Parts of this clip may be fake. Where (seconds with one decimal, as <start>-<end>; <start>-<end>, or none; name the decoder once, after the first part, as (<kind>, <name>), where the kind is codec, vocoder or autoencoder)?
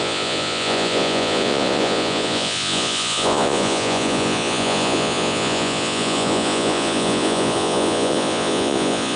0.0-9.2 (vocoder, Vocos)